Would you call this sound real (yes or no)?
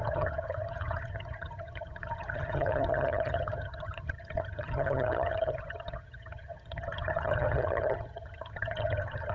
no